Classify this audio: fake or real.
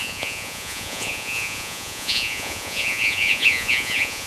fake